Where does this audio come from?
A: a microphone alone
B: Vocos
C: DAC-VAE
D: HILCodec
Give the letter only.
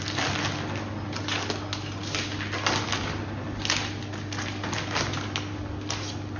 A